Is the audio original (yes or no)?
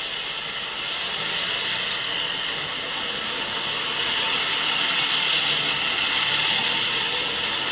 yes